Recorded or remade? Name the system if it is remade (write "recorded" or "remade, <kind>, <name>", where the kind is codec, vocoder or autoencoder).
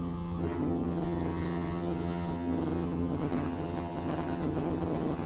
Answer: remade, vocoder, HiFi-GAN